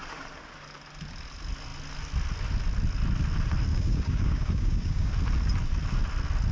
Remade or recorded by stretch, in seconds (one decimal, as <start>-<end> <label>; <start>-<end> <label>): 0.0-3.7 recorded; 3.7-5.1 remade; 5.1-6.5 recorded